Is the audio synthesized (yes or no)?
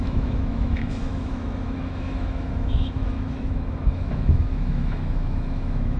yes